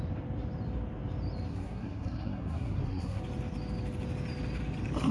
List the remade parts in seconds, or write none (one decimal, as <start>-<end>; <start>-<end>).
1.5-3.2